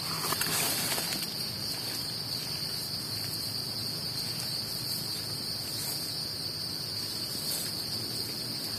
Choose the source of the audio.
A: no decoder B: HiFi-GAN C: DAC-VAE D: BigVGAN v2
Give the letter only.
A